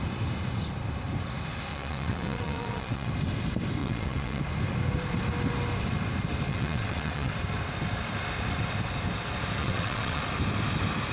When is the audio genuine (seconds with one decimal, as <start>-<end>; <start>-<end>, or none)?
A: 0.0-1.7; 3.1-3.8; 4.4-6.5; 7.3-9.6; 10.2-11.1